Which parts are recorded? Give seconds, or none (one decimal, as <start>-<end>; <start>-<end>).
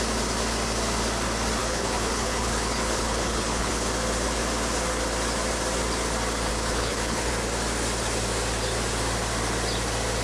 0.0-1.6; 3.7-6.5; 7.3-10.2